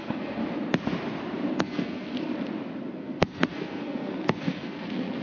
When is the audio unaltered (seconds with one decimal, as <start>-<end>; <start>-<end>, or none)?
0.4-1.5; 2.3-2.9